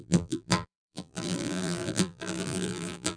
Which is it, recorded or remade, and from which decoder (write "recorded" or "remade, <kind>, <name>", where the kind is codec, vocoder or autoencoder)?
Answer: remade, vocoder, BigVGAN v2